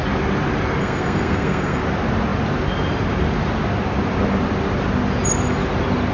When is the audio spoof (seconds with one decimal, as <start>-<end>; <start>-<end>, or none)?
0.8-1.8